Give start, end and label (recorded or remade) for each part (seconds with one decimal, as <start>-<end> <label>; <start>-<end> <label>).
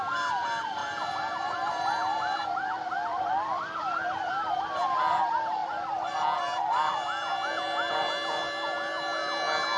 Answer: 0.0-0.8 recorded; 0.8-4.3 remade; 4.3-9.8 recorded